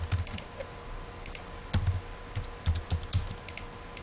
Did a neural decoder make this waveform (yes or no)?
no